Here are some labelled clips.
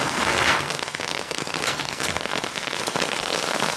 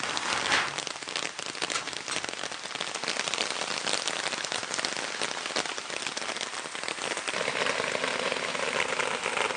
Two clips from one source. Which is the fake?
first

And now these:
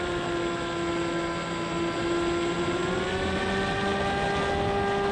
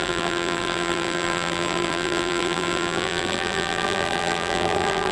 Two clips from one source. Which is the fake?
second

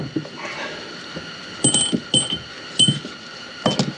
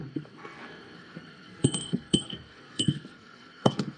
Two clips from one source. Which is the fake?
second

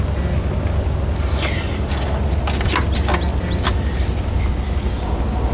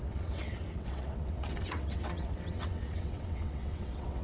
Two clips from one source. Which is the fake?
second